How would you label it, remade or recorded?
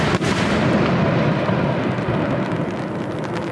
recorded